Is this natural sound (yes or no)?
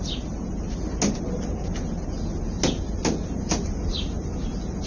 yes